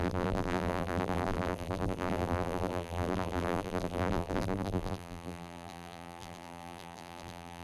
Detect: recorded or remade remade